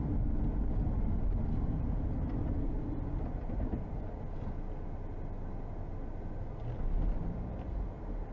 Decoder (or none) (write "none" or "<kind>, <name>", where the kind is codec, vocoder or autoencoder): none